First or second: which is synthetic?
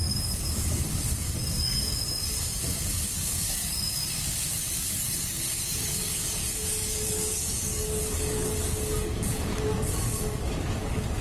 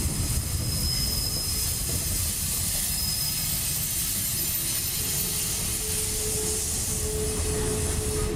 first